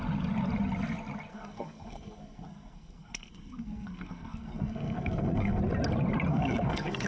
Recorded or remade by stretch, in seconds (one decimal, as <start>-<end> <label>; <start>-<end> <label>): 0.0-1.3 recorded; 1.3-5.6 remade; 5.6-6.3 recorded; 6.3-7.1 remade